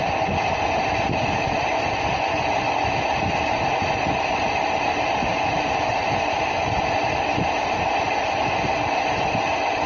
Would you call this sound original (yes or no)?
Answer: yes